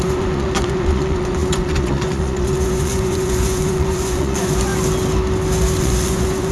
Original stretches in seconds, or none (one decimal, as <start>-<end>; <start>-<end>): 4.7-5.8